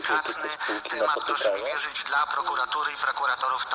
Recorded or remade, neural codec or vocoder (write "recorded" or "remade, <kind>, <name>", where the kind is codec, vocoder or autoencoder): recorded